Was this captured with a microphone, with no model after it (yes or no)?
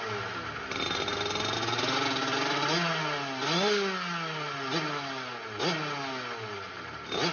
yes